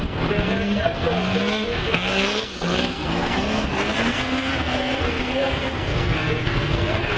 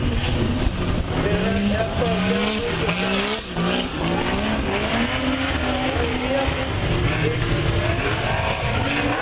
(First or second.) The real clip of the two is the second